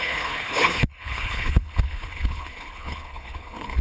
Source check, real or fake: fake